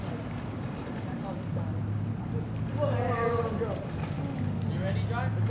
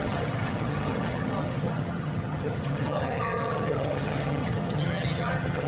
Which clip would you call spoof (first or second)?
second